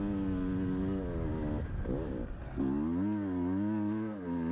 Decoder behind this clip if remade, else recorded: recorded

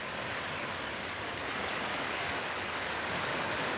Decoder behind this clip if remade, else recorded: remade, codec, DAC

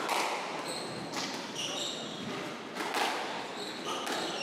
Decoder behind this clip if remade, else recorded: recorded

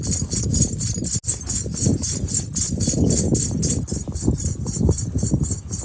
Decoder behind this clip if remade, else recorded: recorded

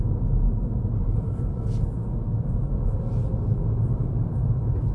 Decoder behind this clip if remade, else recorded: recorded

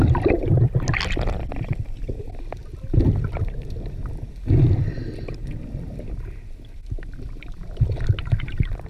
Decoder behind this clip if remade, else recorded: recorded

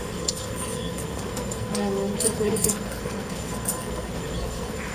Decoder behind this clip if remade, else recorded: remade, codec, SNAC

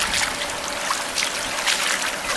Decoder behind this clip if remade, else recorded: recorded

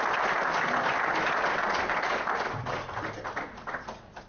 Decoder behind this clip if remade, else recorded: recorded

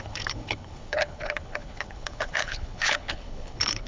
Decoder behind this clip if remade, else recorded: remade, codec, HILCodec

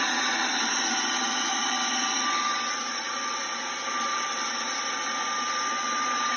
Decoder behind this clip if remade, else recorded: recorded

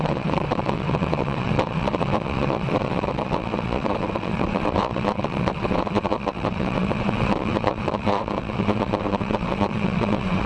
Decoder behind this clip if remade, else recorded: remade, vocoder, WaveNeXt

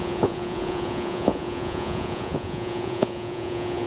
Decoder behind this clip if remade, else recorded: remade, vocoder, Vocos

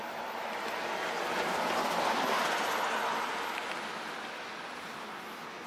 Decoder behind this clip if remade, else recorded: recorded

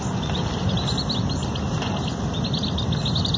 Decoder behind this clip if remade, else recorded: recorded